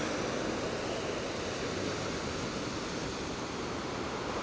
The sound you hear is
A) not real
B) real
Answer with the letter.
B